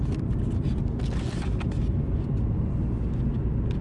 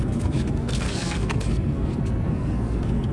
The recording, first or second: first